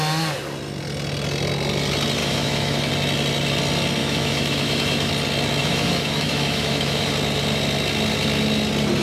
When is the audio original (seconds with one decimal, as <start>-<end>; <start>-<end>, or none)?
0.0-2.2; 2.9-4.0; 5.1-5.6; 7.1-9.0

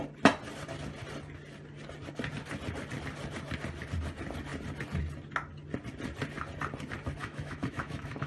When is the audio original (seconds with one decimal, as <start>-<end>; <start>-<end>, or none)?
0.0-7.2

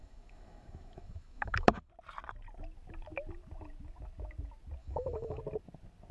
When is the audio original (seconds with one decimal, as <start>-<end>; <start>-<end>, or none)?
1.9-4.8; 5.4-6.1

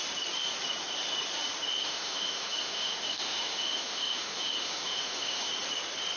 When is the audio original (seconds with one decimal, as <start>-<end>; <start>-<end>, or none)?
0.0-1.8; 5.5-6.2

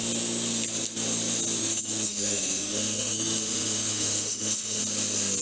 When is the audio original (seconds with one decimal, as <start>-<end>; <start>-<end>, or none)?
0.0-1.6; 4.8-5.4